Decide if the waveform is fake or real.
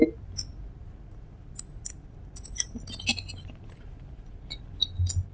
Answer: real